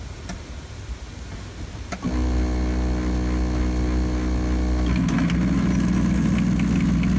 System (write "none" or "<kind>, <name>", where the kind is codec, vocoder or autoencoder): none